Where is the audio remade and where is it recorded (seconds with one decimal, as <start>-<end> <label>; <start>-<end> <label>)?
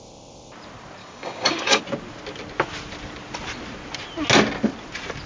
0.0-1.0 recorded; 1.0-1.8 remade; 1.8-5.3 recorded